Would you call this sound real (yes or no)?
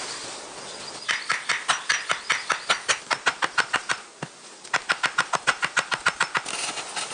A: yes